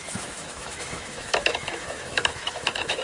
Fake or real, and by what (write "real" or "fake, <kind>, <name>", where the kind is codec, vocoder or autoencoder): fake, autoencoder, DAC-VAE